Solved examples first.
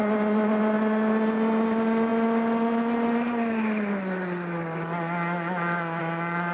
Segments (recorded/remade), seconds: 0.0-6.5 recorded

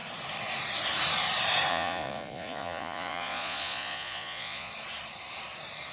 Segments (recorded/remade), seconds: 0.0-1.7 recorded; 1.7-4.7 remade; 4.7-5.9 recorded

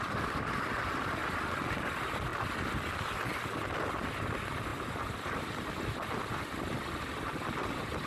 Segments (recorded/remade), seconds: 0.0-8.1 recorded

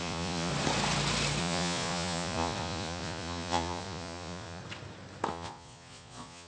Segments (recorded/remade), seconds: 0.0-0.5 remade; 0.5-1.4 recorded; 1.4-4.6 remade; 4.6-5.3 recorded; 5.3-6.5 remade